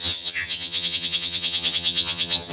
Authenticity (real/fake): fake